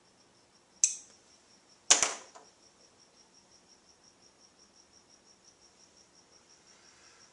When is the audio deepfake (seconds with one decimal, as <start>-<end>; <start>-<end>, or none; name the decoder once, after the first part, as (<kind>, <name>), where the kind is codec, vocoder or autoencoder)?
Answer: none